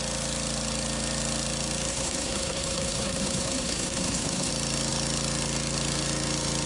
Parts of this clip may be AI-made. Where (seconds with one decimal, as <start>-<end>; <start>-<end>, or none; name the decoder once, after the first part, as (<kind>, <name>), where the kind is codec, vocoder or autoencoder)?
1.9-4.5 (codec, SNAC)